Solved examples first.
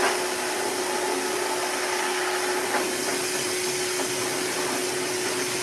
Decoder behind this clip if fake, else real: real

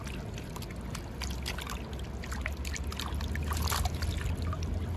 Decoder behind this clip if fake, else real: real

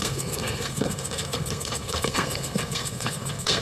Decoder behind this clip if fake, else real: fake, codec, SNAC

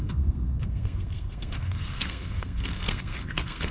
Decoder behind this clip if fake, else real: fake, codec, SNAC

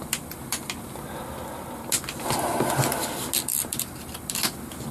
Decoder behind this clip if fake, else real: real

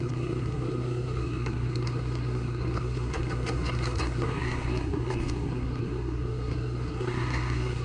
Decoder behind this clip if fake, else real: fake, codec, SNAC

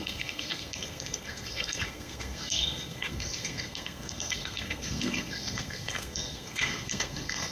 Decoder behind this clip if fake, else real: fake, codec, SNAC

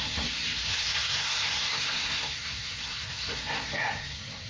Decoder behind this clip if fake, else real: fake, codec, SNAC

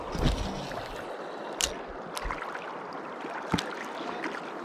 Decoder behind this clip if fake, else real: real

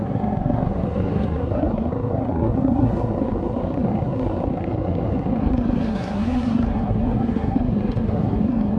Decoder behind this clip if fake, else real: fake, codec, SNAC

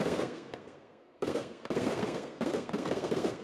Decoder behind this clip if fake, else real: fake, codec, SNAC